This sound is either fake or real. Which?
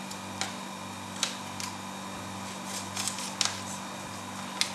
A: real